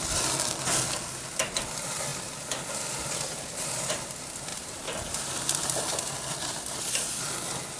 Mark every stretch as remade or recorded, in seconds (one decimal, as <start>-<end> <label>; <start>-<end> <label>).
0.0-2.1 recorded; 2.1-4.1 remade; 4.1-4.5 recorded; 4.5-6.8 remade; 6.8-7.8 recorded